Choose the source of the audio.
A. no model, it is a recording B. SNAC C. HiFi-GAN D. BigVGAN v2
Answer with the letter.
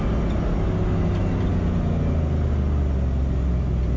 A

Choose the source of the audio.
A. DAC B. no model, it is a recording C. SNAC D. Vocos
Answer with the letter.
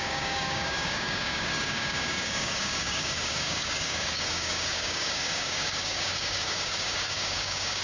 A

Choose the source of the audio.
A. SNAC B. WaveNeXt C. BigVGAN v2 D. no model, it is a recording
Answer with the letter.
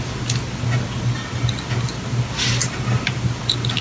D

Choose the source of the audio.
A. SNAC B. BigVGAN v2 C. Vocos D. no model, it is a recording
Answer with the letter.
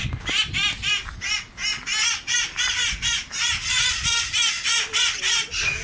D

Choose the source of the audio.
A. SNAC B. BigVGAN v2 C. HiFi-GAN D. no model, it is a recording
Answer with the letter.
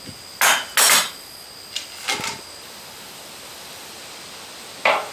D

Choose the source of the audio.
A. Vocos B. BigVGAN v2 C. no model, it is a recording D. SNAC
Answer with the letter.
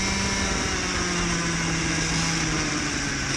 C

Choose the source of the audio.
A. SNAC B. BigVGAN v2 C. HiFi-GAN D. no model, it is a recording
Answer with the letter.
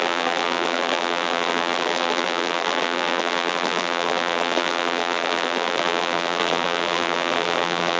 B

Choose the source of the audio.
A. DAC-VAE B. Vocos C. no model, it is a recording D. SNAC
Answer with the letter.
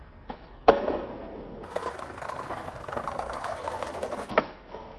D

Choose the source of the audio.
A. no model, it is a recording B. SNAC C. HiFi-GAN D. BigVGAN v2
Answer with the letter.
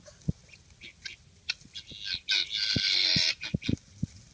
A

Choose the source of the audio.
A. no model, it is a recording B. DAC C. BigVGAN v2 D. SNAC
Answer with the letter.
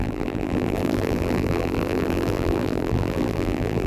C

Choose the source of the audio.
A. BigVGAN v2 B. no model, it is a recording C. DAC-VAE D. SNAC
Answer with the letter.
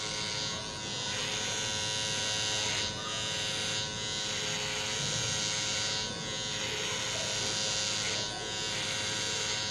B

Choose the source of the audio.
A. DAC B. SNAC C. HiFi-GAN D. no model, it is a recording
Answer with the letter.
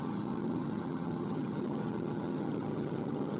C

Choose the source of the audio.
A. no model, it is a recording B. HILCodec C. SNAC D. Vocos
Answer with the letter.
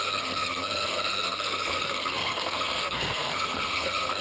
C